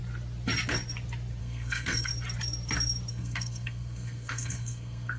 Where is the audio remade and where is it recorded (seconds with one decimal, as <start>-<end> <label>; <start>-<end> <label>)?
0.0-1.4 recorded; 1.4-2.1 remade; 2.1-3.1 recorded; 3.1-5.2 remade